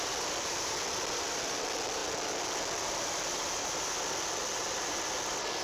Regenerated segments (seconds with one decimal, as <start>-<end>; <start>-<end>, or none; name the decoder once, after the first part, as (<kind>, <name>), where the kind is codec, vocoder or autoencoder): 0.0-5.6 (vocoder, BigVGAN v2)